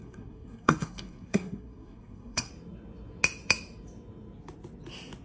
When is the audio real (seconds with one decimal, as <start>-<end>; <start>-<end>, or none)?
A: 2.5-5.2